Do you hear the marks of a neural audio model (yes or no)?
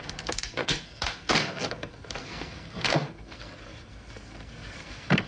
yes